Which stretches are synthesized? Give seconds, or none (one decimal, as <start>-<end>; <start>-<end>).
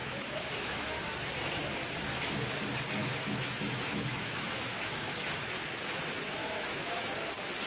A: 0.0-1.0; 3.0-5.6; 6.4-7.1